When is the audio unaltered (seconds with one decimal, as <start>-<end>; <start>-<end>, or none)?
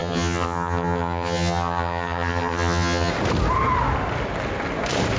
3.1-5.2